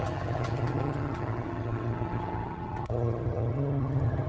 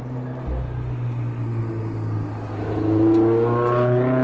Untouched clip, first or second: second